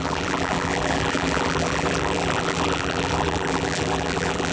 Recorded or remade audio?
remade